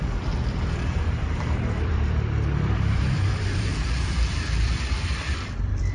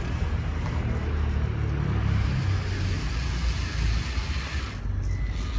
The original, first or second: second